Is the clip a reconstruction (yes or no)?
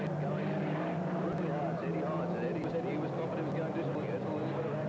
no